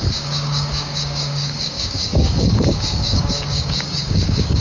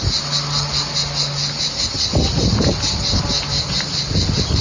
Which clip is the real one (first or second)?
second